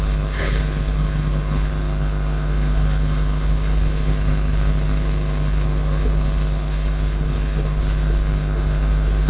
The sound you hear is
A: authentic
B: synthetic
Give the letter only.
B